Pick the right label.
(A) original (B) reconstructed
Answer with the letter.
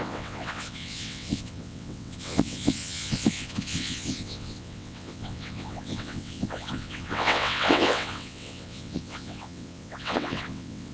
B